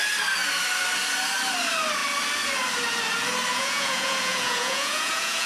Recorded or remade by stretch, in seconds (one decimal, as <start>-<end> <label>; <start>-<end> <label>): 0.0-3.5 recorded; 3.5-5.5 remade